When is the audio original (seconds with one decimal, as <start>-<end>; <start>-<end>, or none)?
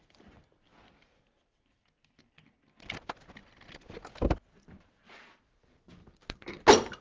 0.0-7.0